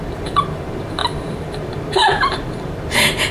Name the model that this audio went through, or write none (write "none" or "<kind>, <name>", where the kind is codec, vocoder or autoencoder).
vocoder, BigVGAN v2